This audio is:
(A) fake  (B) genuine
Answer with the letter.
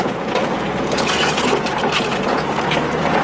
A